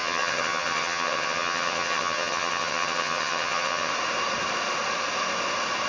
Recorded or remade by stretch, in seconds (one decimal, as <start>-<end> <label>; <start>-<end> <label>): 0.0-3.9 remade; 3.9-5.9 recorded